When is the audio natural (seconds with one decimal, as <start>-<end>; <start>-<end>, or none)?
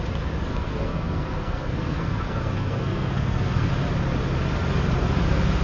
0.0-0.5; 3.7-5.6